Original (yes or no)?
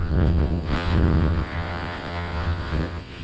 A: no